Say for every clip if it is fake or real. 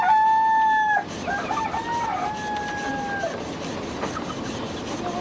real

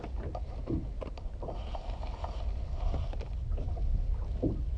real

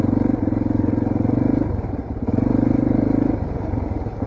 real